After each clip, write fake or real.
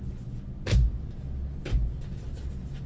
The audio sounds real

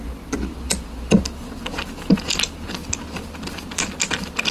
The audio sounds real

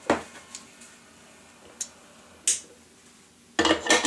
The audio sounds real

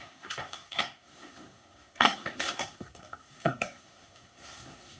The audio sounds fake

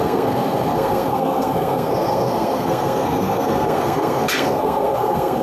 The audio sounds fake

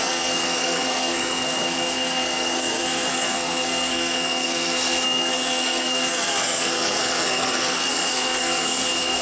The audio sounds fake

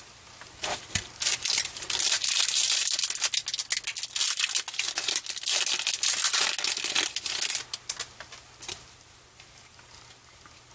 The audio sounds real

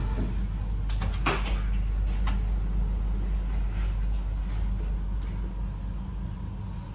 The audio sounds real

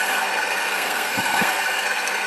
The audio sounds fake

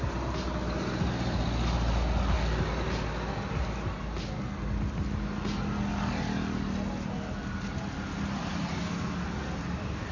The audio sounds real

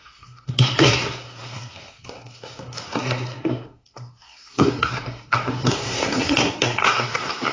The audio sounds fake